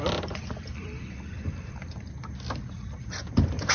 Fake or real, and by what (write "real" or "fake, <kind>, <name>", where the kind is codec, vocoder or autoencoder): real